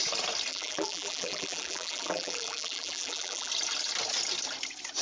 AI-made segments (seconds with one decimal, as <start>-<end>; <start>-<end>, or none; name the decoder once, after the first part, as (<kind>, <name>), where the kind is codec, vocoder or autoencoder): 0.5-3.5 (vocoder, BigVGAN v2)